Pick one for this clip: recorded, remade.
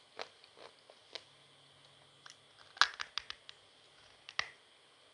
recorded